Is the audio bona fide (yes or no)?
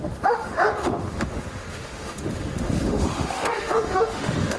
no